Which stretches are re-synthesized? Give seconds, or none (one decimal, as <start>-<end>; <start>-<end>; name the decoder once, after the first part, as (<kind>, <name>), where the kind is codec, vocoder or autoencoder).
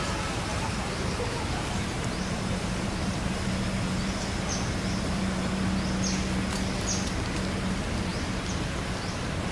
0.5-5.4 (vocoder, BigVGAN v2); 8.1-8.7